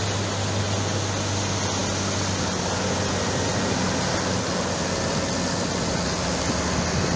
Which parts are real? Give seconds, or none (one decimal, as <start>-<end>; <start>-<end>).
0.0-7.2

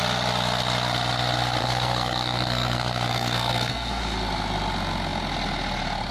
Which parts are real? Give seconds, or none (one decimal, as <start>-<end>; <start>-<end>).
0.0-1.6; 4.0-6.1

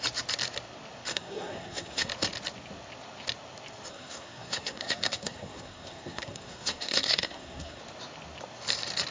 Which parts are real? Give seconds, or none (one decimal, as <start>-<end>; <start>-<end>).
0.0-1.1; 2.1-3.9; 7.8-9.1